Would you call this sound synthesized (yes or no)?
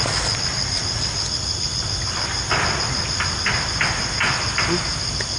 no